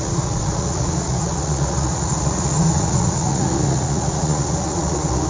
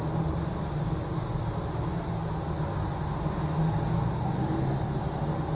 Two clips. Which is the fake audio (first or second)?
first